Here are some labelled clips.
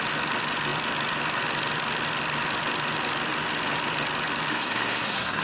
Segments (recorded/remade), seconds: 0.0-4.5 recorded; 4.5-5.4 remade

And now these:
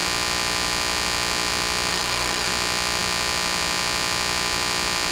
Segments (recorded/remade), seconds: 0.0-1.9 recorded; 1.9-2.5 remade; 2.5-5.1 recorded

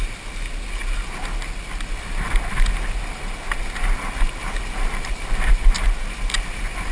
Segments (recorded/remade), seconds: 0.0-6.9 recorded